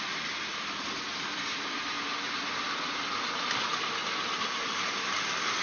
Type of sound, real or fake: real